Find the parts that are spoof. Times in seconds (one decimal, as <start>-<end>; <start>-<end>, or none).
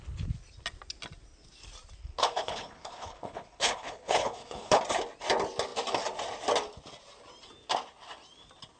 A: 2.0-4.8